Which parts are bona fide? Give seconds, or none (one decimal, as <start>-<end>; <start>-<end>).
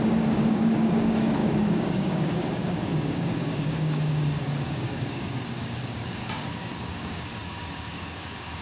none